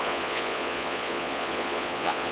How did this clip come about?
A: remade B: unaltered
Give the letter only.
A